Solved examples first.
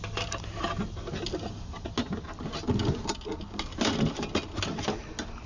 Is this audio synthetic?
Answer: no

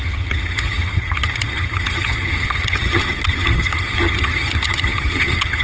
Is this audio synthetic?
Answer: yes